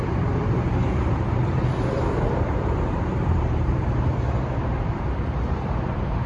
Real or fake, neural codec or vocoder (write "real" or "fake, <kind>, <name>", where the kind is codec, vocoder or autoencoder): fake, vocoder, BigVGAN v2